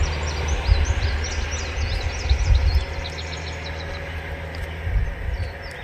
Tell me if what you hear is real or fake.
real